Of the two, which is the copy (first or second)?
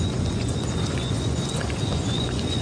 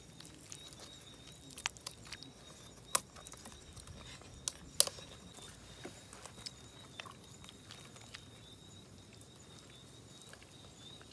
first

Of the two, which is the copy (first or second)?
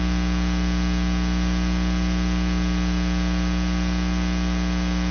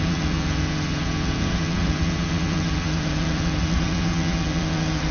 second